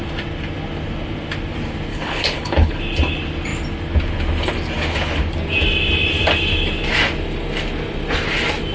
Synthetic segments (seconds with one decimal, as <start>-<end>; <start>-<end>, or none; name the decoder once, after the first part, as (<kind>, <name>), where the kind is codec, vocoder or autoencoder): 1.9-2.8 (codec, HILCodec)